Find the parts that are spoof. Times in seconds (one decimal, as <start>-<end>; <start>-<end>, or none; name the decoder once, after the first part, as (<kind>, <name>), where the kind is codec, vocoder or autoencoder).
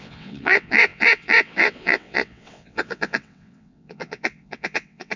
0.0-5.2 (vocoder, WaveNeXt)